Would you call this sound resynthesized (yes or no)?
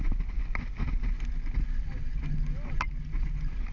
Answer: no